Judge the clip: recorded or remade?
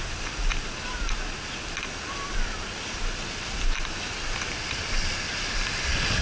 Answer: recorded